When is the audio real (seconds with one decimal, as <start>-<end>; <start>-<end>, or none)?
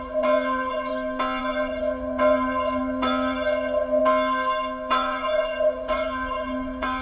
0.9-1.4; 4.0-4.9